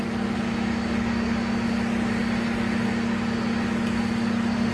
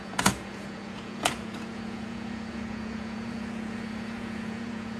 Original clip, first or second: first